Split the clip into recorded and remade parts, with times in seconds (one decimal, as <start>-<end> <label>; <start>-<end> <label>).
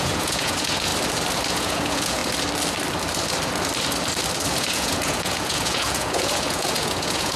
0.0-0.9 remade; 0.9-1.5 recorded; 1.5-2.2 remade; 2.2-4.5 recorded; 4.5-7.4 remade